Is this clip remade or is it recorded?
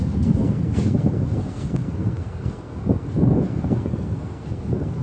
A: remade